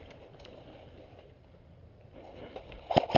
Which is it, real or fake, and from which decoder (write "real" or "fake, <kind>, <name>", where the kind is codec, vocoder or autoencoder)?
real